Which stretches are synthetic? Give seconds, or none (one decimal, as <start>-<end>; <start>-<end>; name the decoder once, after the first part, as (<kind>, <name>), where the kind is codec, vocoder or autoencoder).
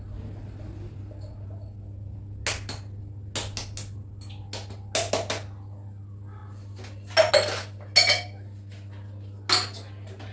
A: none